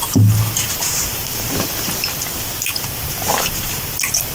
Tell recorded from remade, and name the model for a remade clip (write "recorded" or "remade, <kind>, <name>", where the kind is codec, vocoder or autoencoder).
recorded